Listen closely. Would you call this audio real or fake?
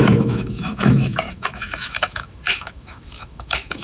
fake